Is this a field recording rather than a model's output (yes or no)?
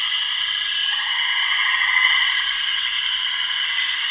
yes